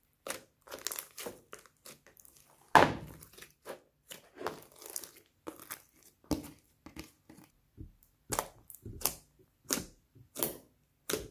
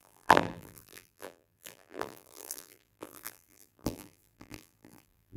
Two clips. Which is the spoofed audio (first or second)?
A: second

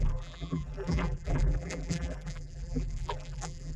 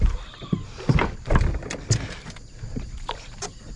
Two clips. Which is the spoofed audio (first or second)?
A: first